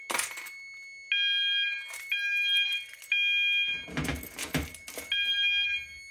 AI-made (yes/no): no